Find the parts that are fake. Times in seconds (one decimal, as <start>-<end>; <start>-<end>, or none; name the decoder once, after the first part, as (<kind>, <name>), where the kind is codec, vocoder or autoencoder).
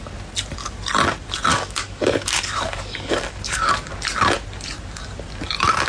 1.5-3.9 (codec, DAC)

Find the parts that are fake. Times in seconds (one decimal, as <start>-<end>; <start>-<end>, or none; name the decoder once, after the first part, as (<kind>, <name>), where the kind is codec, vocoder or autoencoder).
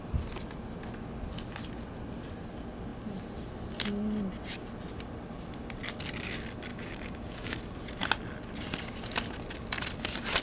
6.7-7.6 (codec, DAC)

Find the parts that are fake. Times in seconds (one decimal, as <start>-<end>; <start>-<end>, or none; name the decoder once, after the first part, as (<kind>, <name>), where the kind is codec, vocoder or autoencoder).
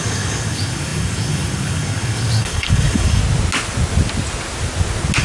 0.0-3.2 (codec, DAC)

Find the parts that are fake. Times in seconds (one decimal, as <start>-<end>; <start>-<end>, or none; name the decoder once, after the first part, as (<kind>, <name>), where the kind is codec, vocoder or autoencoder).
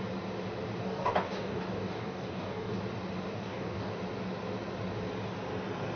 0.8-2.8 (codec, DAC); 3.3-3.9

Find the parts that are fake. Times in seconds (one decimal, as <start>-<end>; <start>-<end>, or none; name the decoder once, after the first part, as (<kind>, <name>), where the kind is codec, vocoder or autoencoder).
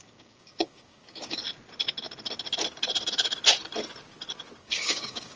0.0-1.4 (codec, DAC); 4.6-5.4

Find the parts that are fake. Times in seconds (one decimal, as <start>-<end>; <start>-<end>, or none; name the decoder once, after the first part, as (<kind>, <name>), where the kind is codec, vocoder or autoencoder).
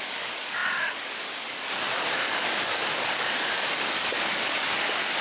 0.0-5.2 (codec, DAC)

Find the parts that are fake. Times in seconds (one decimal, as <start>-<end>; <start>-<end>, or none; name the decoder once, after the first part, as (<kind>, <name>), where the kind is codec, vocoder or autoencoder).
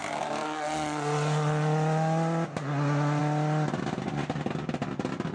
none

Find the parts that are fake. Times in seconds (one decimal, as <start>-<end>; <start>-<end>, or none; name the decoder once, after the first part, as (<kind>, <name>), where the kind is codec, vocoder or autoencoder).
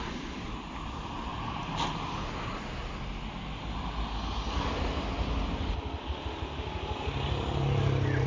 none